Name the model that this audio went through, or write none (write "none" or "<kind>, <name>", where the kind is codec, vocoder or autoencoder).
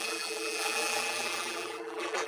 vocoder, BigVGAN v2